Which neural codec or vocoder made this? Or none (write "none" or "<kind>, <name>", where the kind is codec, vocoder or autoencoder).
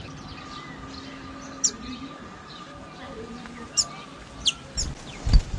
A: none